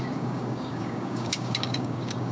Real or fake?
fake